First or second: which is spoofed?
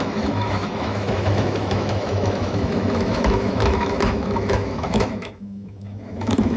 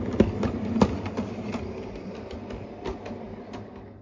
first